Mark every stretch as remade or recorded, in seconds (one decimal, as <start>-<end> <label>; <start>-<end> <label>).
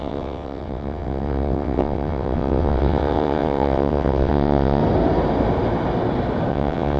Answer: 0.0-4.8 remade; 4.8-6.5 recorded; 6.5-7.0 remade